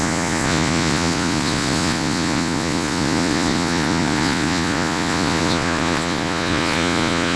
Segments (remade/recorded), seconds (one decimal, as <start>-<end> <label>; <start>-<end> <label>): 0.0-7.4 remade